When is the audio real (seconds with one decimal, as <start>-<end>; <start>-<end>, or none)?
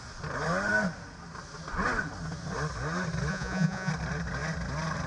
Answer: 0.0-3.3; 3.9-5.1